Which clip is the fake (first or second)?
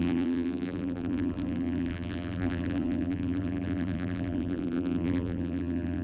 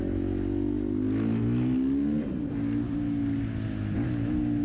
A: first